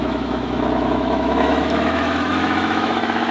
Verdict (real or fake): fake